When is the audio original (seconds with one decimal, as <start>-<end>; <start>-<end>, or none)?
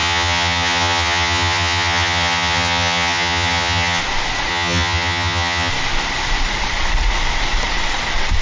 4.0-4.5; 5.7-8.4